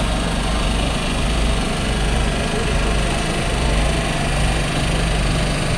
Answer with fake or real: fake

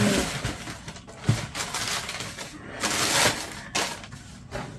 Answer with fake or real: real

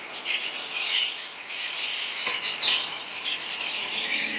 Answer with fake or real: real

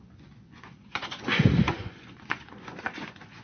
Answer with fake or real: fake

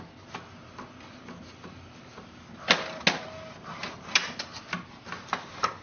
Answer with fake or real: real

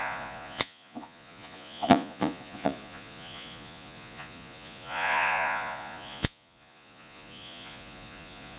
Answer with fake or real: fake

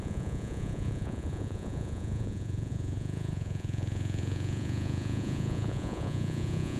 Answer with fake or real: fake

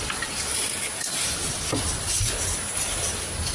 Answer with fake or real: real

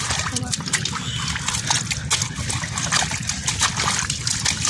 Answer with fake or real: real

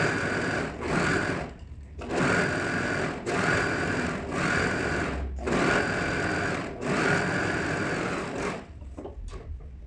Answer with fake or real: real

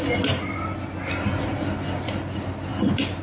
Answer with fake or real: real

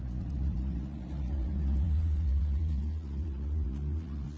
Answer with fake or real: fake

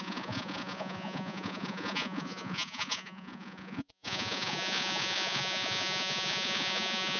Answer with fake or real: fake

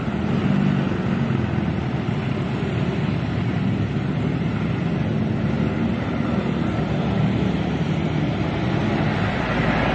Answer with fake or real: real